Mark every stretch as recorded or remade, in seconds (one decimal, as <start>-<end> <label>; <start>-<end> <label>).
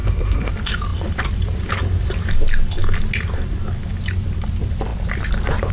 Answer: 0.0-0.5 remade; 0.5-5.7 recorded